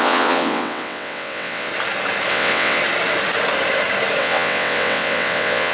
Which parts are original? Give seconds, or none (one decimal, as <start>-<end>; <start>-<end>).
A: 1.7-2.3; 2.8-4.2